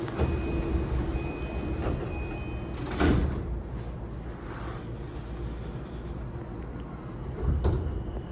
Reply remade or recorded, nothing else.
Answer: recorded